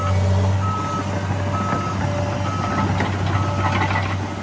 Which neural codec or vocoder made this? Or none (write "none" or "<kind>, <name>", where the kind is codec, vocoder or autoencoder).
none